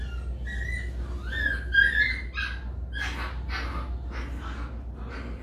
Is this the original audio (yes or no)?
yes